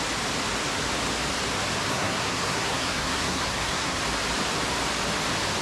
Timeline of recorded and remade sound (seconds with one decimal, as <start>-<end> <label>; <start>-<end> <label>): 0.0-1.9 recorded; 1.9-4.0 remade; 4.0-5.6 recorded